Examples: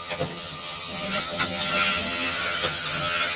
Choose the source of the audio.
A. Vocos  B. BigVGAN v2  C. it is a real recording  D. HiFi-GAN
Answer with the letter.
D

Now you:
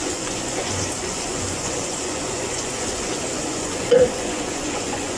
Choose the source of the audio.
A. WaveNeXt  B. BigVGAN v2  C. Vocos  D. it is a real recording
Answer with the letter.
C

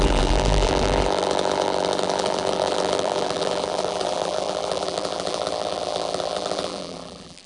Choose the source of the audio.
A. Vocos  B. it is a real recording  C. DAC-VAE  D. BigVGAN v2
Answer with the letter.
D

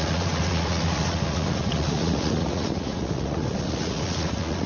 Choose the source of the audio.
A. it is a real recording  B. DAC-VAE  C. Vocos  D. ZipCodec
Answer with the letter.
C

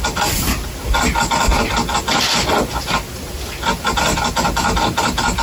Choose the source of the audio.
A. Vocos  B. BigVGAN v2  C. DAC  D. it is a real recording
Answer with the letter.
D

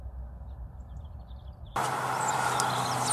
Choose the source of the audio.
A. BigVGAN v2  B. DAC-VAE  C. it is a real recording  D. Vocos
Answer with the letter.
C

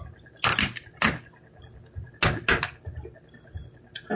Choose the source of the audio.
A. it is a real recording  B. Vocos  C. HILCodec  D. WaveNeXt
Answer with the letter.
A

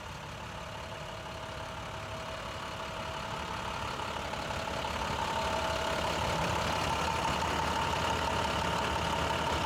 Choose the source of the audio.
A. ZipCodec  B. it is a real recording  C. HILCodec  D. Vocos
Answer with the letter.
B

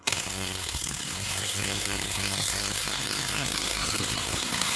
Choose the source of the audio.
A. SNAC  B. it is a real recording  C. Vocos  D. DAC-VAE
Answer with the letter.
A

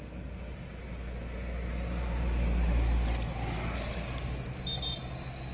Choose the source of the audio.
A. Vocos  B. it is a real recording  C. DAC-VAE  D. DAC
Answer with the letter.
B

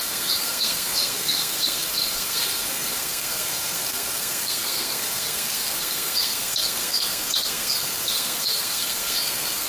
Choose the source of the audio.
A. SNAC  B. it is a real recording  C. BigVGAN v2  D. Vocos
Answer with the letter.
A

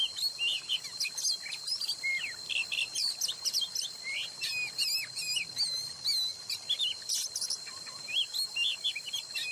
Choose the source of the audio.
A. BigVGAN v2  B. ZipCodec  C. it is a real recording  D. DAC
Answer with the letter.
C